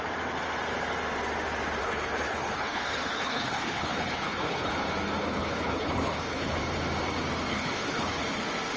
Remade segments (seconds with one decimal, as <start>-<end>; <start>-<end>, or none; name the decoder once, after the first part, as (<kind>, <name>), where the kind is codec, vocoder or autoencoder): 1.8-4.7 (codec, HILCodec); 5.2-6.6; 7.5-8.2